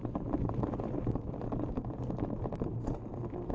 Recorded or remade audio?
recorded